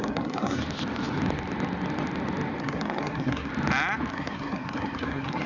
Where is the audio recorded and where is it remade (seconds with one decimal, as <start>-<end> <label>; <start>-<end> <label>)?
0.0-0.6 remade; 0.6-2.6 recorded; 2.6-3.5 remade; 3.5-4.1 recorded; 4.1-5.5 remade